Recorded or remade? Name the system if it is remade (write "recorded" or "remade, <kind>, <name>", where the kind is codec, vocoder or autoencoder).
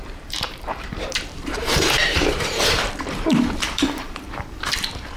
remade, vocoder, BigVGAN v2